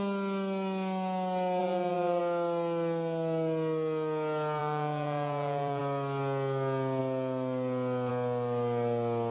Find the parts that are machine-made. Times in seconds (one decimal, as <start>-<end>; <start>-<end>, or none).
1.6-2.2; 4.6-5.8